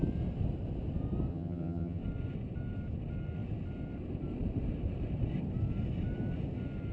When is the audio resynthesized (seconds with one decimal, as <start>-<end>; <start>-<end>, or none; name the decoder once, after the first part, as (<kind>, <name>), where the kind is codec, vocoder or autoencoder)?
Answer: 1.3-2.0 (vocoder, HiFi-GAN)